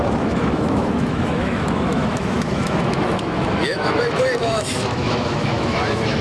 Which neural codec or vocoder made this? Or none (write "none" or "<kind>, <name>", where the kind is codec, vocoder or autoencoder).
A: autoencoder, DAC-VAE